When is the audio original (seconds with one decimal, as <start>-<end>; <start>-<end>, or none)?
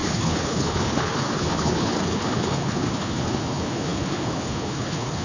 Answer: none